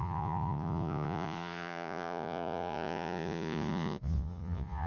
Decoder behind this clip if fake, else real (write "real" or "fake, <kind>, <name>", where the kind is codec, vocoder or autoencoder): fake, vocoder, Vocos